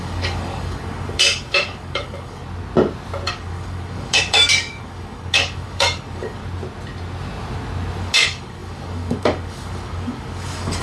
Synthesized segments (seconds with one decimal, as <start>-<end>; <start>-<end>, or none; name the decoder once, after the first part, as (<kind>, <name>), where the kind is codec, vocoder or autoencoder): 0.0-2.4 (codec, DAC); 3.3-6.4; 8.0-10.8